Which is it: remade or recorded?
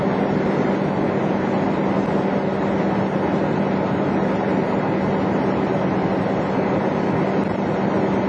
recorded